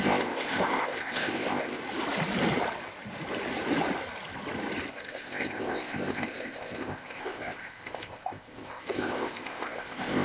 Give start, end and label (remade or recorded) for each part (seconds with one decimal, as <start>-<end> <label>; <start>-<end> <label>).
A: 0.0-1.8 remade; 1.8-4.9 recorded; 4.9-10.2 remade